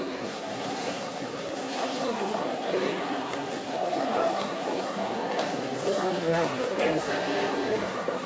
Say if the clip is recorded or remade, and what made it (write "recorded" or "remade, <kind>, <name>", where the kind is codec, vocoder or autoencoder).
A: remade, codec, SNAC